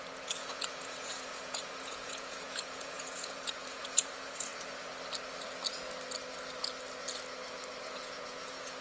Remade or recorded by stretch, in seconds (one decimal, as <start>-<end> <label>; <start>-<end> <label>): 0.0-4.5 remade; 4.5-7.8 recorded; 7.8-8.8 remade